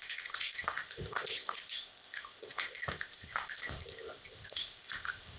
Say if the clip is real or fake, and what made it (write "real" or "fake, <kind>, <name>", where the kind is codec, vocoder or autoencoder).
fake, codec, ZipCodec